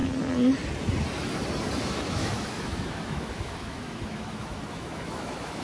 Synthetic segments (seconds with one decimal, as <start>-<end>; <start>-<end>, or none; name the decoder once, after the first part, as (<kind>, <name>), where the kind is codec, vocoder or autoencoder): 1.8-5.6 (autoencoder, DAC-VAE)